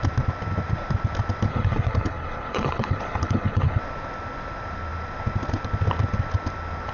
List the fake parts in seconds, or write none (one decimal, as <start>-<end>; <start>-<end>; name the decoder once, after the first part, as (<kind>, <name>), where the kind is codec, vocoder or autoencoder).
1.5-3.8 (codec, HILCodec)